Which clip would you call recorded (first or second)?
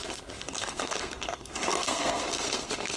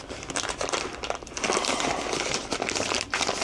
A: second